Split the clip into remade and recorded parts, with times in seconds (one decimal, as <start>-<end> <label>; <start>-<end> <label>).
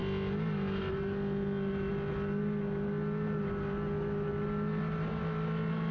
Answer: 0.0-5.9 recorded